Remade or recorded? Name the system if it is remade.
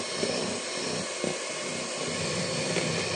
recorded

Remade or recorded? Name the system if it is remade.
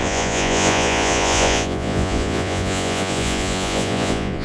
remade, vocoder, Vocos